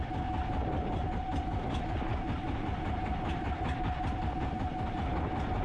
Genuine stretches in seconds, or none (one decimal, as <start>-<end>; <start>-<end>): 0.0-5.6